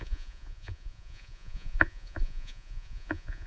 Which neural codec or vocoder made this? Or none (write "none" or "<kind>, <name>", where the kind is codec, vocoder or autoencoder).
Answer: vocoder, Vocos